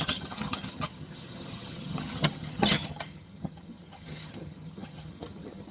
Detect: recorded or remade remade